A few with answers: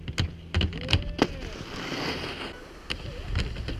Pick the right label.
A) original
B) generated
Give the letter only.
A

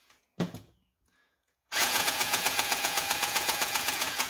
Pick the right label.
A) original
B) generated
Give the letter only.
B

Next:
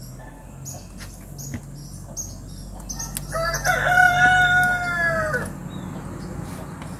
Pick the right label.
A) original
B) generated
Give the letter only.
A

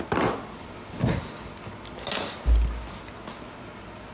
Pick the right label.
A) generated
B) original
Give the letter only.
B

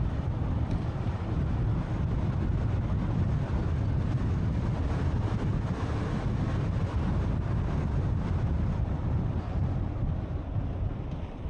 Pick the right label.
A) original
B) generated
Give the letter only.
A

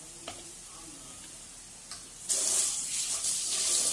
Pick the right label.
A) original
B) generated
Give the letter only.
A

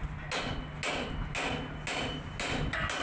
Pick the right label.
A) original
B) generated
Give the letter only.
A